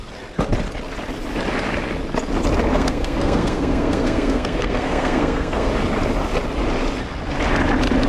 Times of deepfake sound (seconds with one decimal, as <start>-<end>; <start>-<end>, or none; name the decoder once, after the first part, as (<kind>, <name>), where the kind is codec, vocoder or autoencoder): 2.7-5.7 (codec, SNAC)